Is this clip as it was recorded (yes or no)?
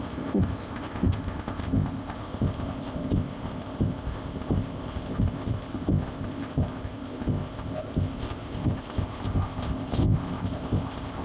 no